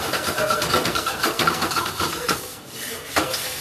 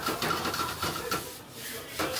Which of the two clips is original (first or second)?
second